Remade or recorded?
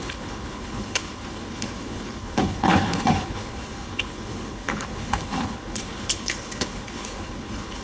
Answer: remade